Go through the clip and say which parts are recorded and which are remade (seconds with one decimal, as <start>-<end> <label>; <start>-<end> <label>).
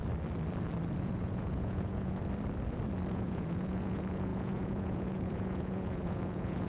0.0-1.0 recorded; 1.0-2.2 remade; 2.2-3.1 recorded; 3.1-6.7 remade